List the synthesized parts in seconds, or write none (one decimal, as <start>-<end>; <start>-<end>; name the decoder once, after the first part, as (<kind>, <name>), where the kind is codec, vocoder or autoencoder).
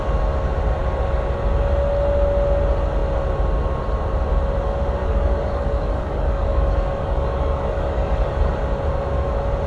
5.0-8.4 (codec, DAC)